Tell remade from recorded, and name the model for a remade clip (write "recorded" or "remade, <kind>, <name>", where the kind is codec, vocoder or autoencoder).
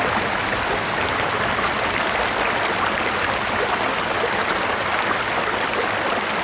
recorded